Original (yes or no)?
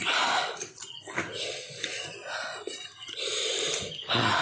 yes